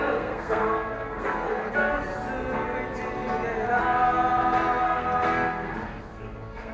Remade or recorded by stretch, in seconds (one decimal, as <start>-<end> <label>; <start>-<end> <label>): 0.0-2.1 remade; 2.1-4.8 recorded; 4.8-6.7 remade